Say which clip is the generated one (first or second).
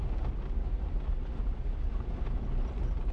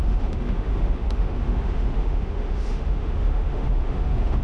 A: second